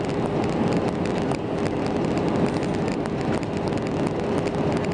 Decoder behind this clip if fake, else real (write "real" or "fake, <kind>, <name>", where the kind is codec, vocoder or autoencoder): real